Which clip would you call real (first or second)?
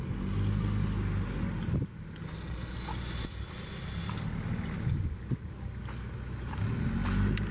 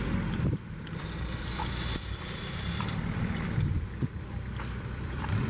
first